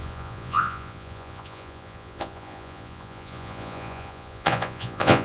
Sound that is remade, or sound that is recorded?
remade